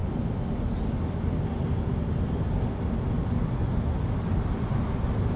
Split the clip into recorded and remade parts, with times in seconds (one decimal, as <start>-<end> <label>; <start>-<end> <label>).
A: 0.0-5.4 recorded